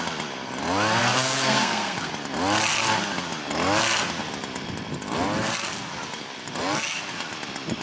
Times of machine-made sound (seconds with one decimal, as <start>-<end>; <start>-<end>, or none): 1.0-2.1